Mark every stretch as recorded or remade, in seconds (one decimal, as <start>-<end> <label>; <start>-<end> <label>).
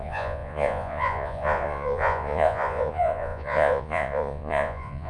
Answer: 0.0-5.1 remade